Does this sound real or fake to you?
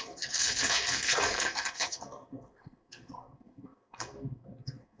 fake